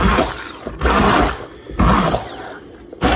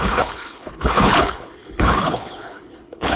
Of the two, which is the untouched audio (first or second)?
first